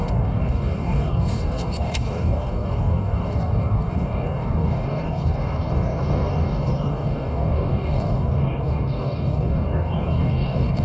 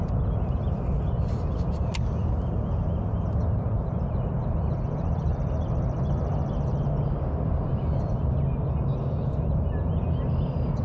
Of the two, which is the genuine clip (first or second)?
second